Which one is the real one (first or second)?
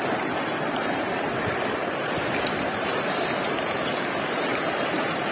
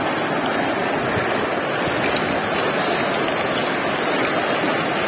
second